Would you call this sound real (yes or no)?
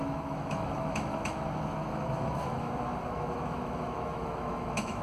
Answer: no